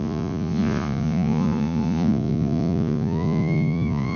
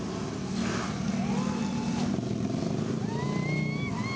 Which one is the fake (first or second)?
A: first